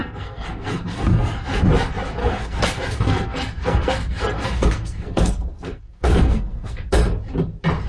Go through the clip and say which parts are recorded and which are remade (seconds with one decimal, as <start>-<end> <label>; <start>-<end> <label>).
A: 0.0-1.6 remade; 1.6-2.2 recorded; 2.2-6.9 remade; 6.9-7.9 recorded